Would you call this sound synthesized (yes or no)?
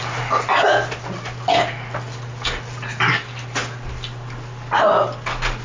no